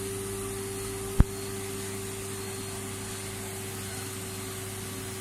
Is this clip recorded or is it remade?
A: recorded